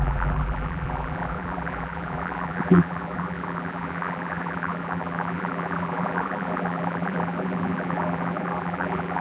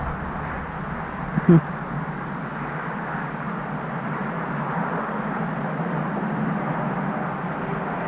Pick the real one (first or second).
second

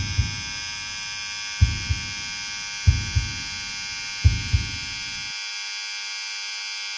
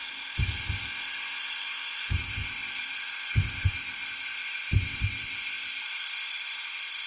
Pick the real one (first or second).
first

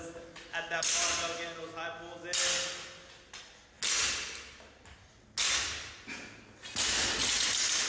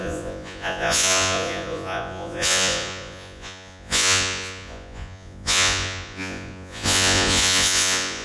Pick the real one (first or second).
first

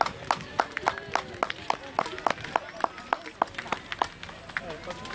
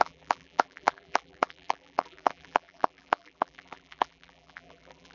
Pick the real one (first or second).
first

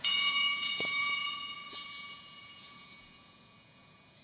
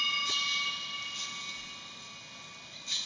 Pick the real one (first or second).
second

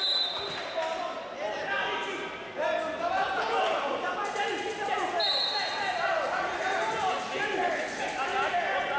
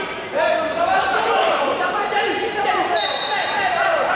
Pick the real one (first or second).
first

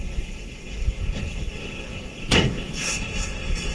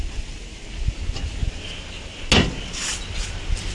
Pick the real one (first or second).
second